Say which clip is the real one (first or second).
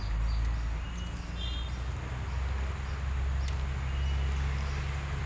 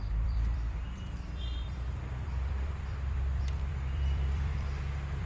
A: first